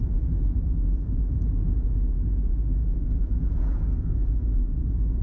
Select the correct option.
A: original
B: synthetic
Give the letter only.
B